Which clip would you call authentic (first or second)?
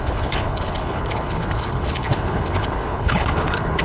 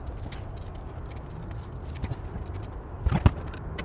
second